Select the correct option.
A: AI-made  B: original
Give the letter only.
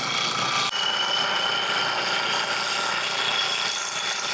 B